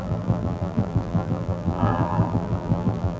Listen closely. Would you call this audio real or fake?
fake